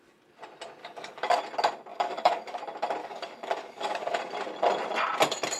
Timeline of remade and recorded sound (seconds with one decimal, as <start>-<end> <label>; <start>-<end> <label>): 0.0-0.8 recorded; 0.8-1.4 remade; 1.4-1.9 recorded; 1.9-2.6 remade; 2.6-3.0 recorded; 3.0-4.2 remade; 4.2-5.6 recorded